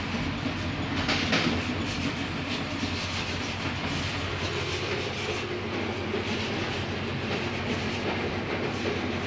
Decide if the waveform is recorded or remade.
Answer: recorded